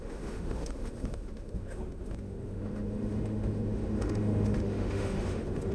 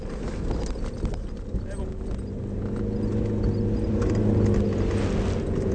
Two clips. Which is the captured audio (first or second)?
second